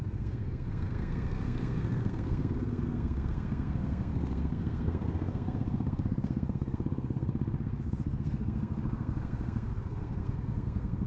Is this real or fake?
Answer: fake